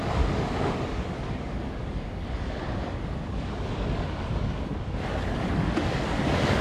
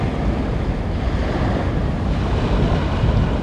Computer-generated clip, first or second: first